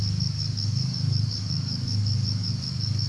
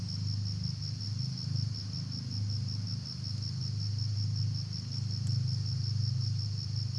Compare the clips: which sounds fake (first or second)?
first